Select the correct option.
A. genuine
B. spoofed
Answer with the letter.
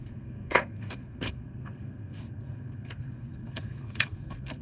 B